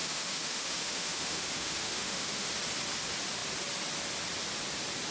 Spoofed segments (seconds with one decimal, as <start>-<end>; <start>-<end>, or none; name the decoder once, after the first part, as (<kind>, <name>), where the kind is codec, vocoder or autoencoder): 0.0-2.5 (autoencoder, DAC-VAE)